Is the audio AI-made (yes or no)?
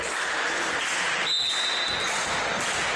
no